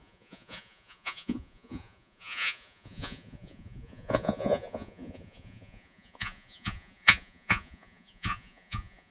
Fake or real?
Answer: fake